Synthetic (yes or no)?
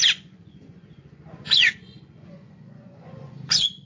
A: yes